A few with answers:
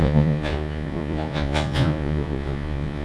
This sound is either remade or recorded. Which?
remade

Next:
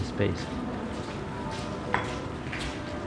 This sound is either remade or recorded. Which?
recorded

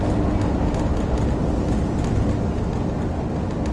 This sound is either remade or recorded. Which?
recorded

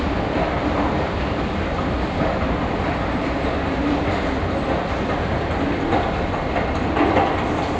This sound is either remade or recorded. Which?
recorded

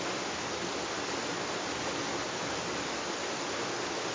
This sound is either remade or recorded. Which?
recorded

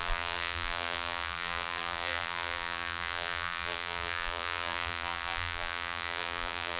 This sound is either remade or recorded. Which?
remade